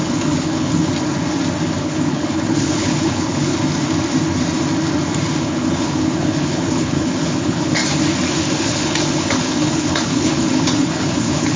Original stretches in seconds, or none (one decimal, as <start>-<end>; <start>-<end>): 0.9-1.8; 3.5-5.4; 7.8-8.6